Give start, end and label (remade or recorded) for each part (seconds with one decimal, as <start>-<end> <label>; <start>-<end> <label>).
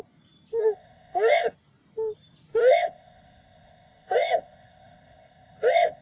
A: 0.0-0.6 recorded; 0.6-1.5 remade; 1.5-2.6 recorded; 2.6-6.0 remade